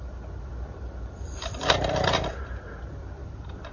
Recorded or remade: remade